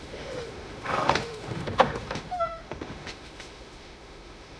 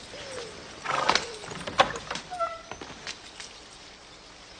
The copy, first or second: first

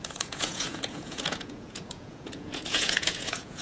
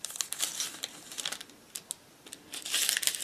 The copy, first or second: first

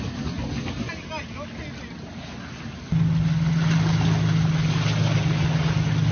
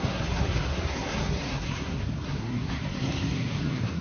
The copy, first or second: second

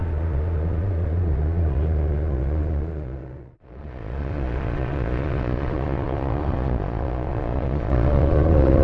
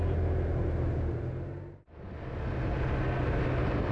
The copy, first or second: first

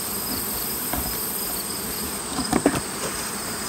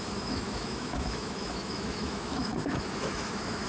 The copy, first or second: second